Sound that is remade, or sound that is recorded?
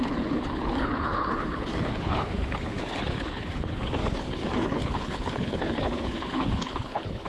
remade